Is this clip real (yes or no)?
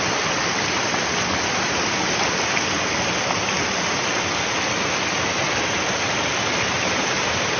yes